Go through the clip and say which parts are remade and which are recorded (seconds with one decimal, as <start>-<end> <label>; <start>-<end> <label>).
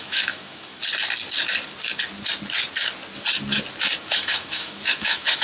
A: 0.0-0.8 remade; 0.8-4.0 recorded; 4.0-5.4 remade